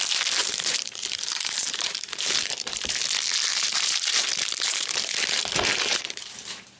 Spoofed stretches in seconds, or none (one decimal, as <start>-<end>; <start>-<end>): 0.4-3.0; 3.5-4.3; 5.7-6.3